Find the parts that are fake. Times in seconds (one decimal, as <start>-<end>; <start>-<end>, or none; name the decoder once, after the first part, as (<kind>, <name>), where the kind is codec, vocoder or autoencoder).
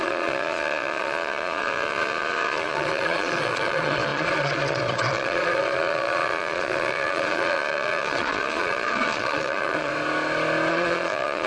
0.0-9.9 (vocoder, Vocos); 10.7-11.5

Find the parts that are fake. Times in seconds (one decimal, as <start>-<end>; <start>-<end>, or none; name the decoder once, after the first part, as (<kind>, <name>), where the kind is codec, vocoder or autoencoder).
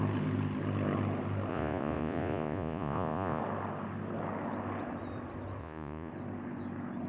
1.5-3.4 (vocoder, Vocos); 5.6-6.1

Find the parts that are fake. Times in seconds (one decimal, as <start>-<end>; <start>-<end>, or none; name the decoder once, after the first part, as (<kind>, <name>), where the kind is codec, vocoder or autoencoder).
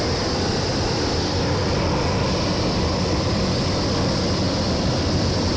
none